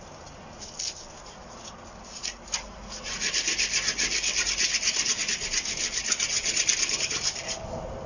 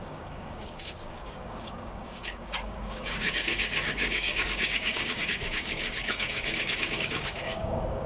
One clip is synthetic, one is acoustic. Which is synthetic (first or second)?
second